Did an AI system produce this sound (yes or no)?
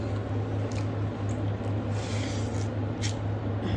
no